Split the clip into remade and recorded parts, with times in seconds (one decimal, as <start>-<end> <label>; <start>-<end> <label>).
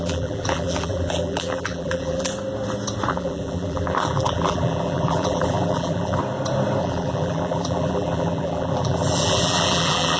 0.0-2.3 remade; 2.3-3.1 recorded; 3.1-6.2 remade; 6.2-6.8 recorded; 6.8-10.2 remade